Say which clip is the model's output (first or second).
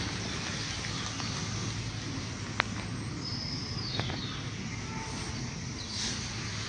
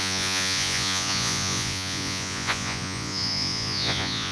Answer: second